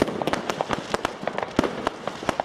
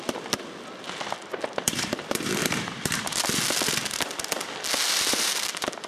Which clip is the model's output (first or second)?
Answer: second